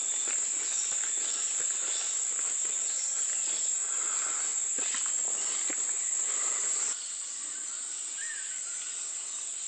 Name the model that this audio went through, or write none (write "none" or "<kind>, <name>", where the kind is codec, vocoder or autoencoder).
none